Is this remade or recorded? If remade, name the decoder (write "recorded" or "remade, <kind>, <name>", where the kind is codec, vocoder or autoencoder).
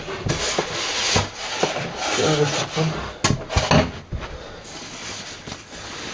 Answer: recorded